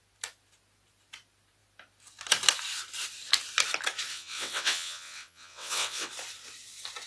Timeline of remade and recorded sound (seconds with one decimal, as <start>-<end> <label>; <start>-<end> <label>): 0.0-4.1 recorded; 4.1-6.1 remade; 6.1-7.1 recorded